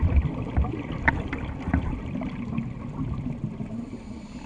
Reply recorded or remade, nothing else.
recorded